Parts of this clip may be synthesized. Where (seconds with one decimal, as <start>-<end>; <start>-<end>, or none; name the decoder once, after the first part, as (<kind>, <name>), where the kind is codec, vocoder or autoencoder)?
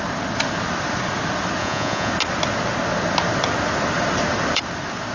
1.6-2.1 (vocoder, Vocos)